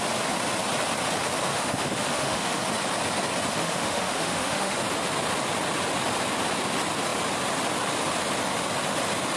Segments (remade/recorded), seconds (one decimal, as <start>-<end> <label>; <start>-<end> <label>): 0.0-1.5 recorded; 1.5-2.6 remade; 2.6-3.5 recorded; 3.5-4.8 remade; 4.8-9.4 recorded